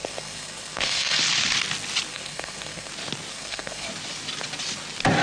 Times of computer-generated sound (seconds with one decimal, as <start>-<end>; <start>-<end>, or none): 0.0-1.2; 2.1-2.9; 3.3-3.9